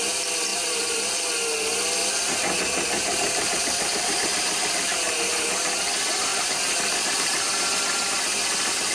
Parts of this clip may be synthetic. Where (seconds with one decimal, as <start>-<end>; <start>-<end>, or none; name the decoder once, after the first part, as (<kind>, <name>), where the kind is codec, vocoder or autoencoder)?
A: 0.5-1.1 (vocoder, BigVGAN v2); 2.0-5.2; 6.3-6.9